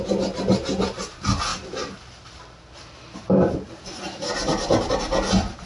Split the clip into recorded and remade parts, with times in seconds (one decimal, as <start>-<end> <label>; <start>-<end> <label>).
0.0-5.7 recorded